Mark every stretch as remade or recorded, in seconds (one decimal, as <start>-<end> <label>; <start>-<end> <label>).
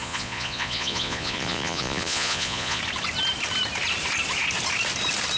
0.0-2.8 remade; 2.8-5.4 recorded